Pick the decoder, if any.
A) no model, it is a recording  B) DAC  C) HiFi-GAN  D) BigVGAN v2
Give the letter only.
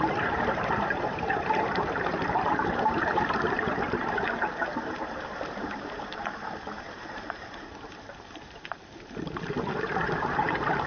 D